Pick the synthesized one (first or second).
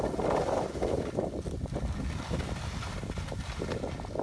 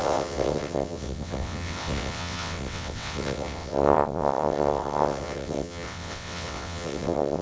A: second